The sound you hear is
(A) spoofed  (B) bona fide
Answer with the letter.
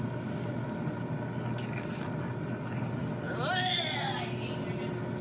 B